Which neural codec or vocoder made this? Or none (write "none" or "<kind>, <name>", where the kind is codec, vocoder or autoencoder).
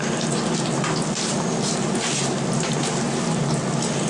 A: none